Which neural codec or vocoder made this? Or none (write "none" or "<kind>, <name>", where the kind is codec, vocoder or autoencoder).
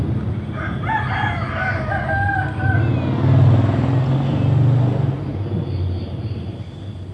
none